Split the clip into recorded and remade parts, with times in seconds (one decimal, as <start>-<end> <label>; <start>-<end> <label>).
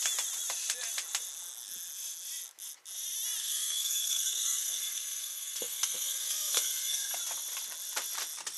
0.0-3.4 recorded; 3.4-7.2 remade; 7.2-8.6 recorded